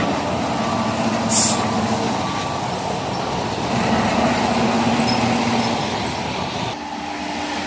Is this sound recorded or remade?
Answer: recorded